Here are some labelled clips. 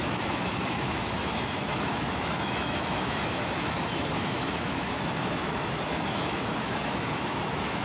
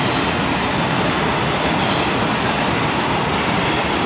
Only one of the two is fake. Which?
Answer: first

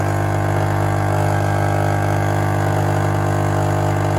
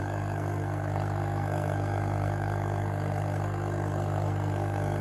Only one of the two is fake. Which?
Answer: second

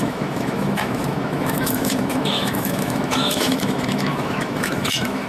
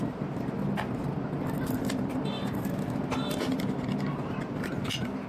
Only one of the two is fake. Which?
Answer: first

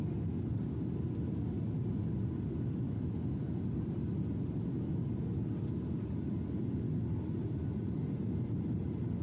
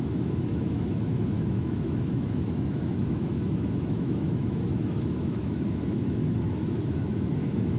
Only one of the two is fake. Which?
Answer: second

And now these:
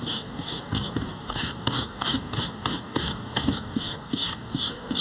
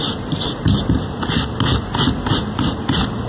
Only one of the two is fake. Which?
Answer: first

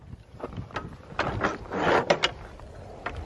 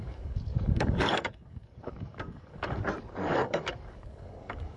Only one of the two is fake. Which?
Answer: second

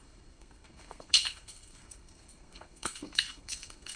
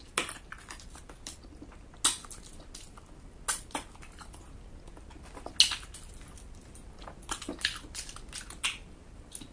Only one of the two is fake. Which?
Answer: first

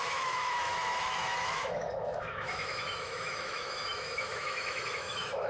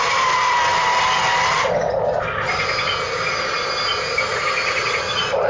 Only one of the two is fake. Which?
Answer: first